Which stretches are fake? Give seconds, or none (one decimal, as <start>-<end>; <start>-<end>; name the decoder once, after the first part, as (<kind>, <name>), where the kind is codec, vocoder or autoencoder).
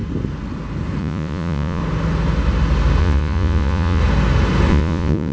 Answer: 1.0-1.8 (vocoder, Vocos); 3.0-4.0; 4.7-5.3